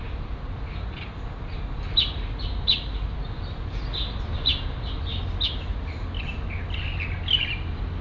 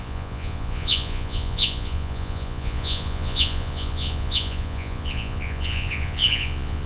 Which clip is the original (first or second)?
first